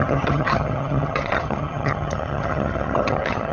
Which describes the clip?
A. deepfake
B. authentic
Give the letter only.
A